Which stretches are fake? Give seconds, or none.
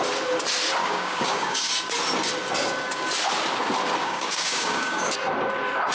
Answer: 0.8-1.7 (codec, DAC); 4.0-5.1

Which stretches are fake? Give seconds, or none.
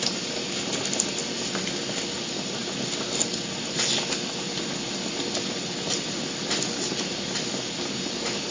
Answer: none